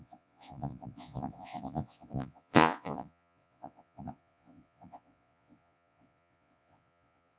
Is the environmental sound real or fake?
fake